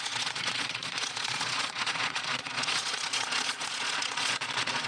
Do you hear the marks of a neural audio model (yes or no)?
yes